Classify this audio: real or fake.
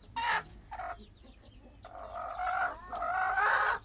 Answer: real